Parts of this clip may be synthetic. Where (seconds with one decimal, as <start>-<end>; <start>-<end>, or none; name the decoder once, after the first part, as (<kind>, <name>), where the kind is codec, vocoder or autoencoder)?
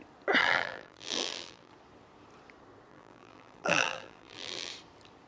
0.4-1.7 (vocoder, BigVGAN v2); 2.9-4.7